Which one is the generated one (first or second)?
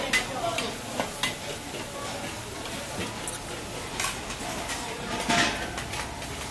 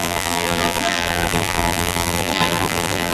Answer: second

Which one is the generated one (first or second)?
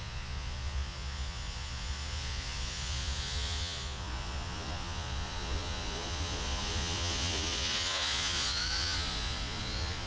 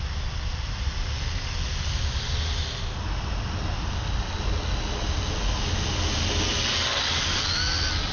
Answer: first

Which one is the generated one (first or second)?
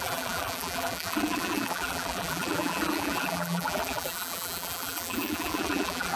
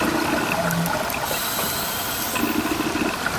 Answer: first